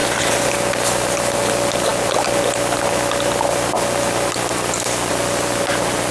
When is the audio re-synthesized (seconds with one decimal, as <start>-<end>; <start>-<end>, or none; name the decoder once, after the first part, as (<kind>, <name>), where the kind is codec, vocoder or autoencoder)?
none